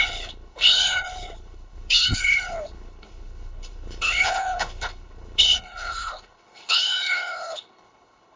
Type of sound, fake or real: fake